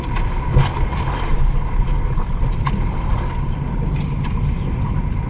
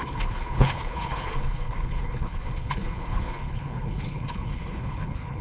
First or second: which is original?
first